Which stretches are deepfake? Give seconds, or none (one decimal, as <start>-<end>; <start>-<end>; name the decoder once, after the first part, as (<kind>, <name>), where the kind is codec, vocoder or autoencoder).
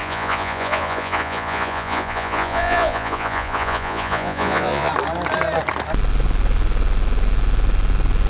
0.0-4.9 (vocoder, Vocos)